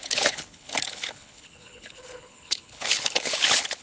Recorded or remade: remade